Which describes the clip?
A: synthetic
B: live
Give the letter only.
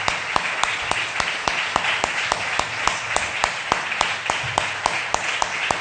B